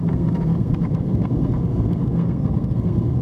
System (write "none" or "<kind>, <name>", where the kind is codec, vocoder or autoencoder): codec, SNAC